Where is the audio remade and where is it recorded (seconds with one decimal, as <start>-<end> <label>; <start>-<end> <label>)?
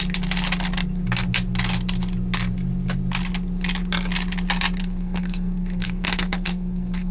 0.0-4.8 recorded; 4.8-7.1 remade